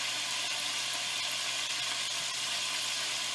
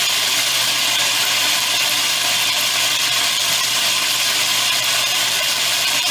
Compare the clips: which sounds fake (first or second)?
second